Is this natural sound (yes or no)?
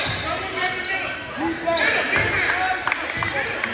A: yes